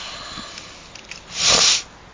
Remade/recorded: recorded